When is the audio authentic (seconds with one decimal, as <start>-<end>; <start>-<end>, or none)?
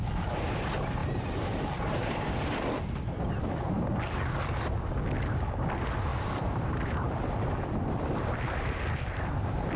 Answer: 0.0-6.1; 7.3-9.8